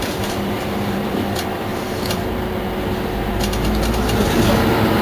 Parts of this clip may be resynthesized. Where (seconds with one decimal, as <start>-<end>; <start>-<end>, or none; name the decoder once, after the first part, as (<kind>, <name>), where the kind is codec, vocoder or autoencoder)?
0.0-1.7 (vocoder, BigVGAN v2)